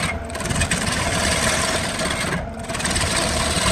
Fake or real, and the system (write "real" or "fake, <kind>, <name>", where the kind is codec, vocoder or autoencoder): real